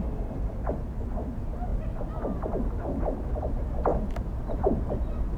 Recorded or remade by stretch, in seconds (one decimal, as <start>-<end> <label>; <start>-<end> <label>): 0.0-3.9 recorded; 3.9-5.4 remade